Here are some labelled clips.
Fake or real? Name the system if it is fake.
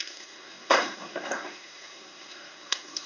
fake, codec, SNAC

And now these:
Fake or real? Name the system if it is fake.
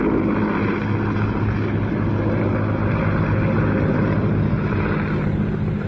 real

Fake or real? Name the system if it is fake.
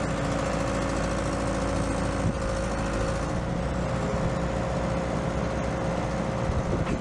real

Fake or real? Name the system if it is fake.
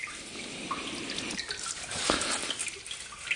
real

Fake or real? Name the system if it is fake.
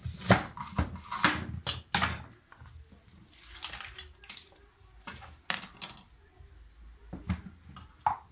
real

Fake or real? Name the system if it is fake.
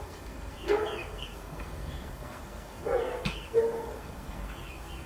fake, codec, SNAC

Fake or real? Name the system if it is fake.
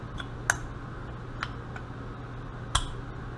real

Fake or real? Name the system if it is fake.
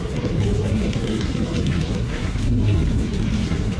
fake, codec, SNAC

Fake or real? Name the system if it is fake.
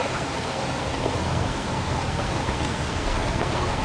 fake, codec, SNAC